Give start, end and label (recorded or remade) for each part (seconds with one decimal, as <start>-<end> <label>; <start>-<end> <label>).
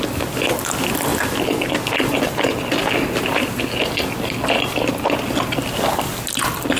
0.0-6.8 recorded